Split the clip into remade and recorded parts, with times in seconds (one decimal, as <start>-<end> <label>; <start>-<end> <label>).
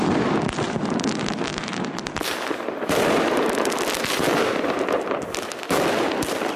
0.0-6.6 recorded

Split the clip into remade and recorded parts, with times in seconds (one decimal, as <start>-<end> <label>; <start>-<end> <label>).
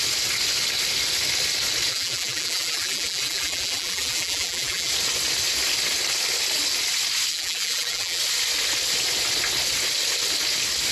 0.0-1.9 recorded; 1.9-4.9 remade; 4.9-7.3 recorded; 7.3-8.2 remade; 8.2-10.9 recorded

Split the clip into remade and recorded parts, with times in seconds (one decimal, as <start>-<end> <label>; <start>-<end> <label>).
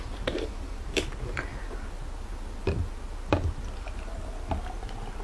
0.0-5.2 recorded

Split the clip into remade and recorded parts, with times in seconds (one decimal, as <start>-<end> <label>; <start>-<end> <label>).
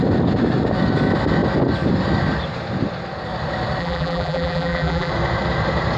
0.0-3.8 recorded; 3.8-5.1 remade; 5.1-6.0 recorded